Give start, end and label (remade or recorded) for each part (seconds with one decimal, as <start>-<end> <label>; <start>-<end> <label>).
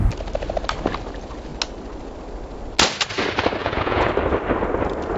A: 0.0-3.6 recorded; 3.6-4.1 remade; 4.1-5.2 recorded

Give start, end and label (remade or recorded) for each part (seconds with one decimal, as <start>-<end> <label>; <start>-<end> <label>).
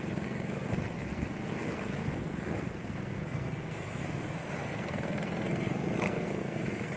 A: 0.0-7.0 remade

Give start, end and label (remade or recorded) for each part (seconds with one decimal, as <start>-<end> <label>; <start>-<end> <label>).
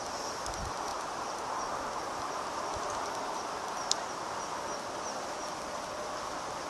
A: 0.0-6.7 remade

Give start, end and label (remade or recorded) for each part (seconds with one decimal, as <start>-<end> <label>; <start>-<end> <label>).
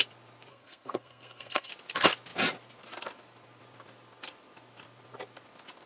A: 0.0-0.5 recorded; 0.5-1.7 remade; 1.7-5.9 recorded